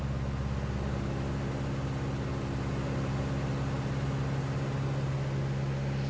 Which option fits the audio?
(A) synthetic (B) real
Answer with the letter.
B